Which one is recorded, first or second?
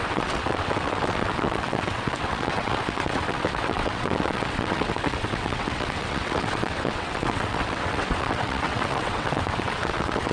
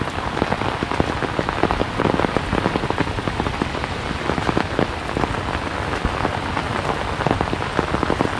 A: second